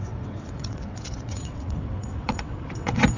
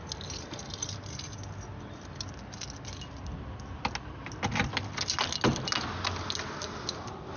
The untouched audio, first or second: second